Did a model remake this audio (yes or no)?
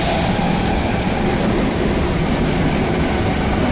no